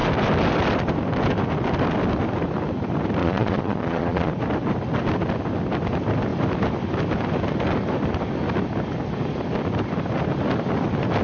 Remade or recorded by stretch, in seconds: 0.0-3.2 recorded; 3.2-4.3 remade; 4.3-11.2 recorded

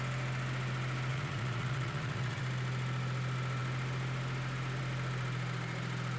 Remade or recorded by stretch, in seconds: 0.0-1.1 recorded; 1.1-2.4 remade; 2.4-6.2 recorded

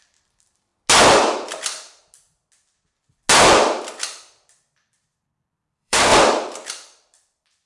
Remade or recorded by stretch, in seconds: 0.0-0.7 remade; 0.7-1.2 recorded; 1.2-2.0 remade; 2.0-4.2 recorded; 4.2-6.1 remade; 6.1-6.7 recorded; 6.7-7.7 remade

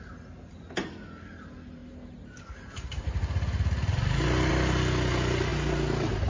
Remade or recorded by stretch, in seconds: 0.0-6.3 recorded

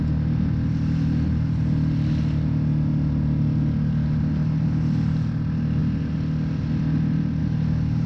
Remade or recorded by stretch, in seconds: 0.0-8.1 recorded

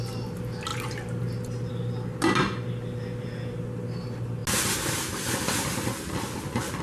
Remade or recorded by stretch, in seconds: 0.0-6.8 recorded